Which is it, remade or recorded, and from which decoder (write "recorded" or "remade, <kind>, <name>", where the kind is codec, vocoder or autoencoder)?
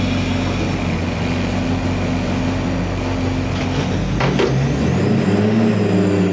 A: recorded